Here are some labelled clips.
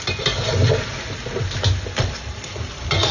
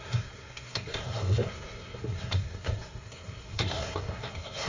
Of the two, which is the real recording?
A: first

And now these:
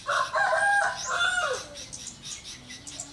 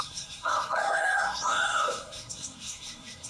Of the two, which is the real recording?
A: first